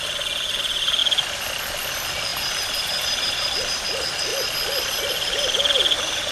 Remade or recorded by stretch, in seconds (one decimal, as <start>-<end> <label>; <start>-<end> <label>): 0.0-2.3 recorded; 2.3-3.5 remade; 3.5-6.3 recorded